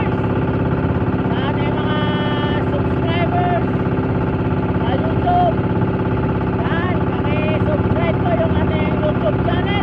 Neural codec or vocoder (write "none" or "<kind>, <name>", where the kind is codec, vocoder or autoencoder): none